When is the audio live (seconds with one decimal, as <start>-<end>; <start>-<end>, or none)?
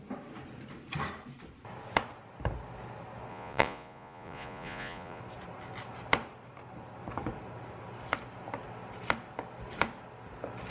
0.0-3.3; 5.2-10.7